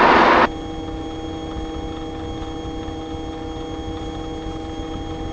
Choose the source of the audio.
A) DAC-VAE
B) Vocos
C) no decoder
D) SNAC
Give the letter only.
C